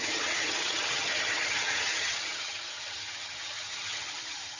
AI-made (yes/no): yes